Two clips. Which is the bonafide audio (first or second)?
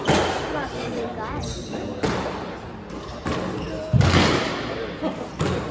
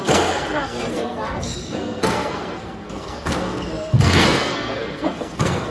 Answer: first